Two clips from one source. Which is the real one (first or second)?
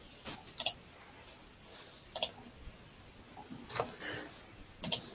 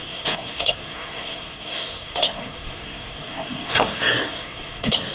first